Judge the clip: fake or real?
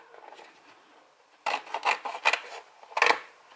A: real